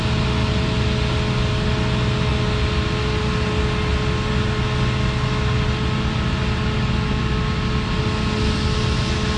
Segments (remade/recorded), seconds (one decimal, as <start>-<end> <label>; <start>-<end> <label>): 0.0-9.4 recorded